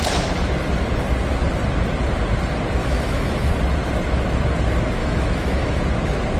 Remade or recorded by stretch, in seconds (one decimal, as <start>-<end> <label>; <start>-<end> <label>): 0.0-2.8 recorded; 2.8-3.5 remade; 3.5-5.0 recorded; 5.0-5.8 remade; 5.8-6.4 recorded